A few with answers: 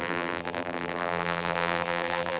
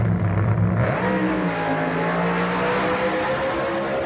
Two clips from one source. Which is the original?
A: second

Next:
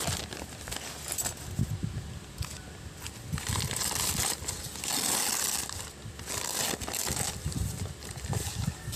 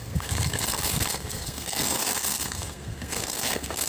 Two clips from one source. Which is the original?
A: first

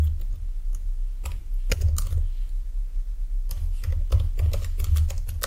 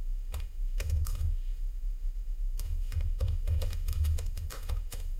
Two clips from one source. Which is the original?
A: first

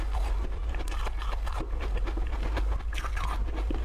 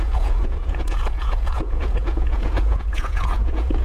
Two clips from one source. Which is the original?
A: first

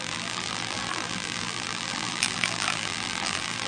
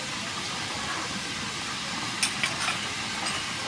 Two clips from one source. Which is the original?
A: second